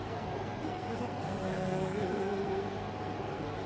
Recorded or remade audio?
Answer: remade